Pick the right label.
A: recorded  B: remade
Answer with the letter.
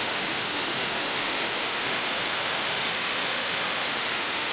B